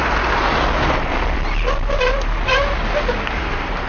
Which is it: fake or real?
real